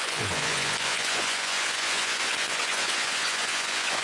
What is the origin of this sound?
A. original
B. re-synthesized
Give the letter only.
B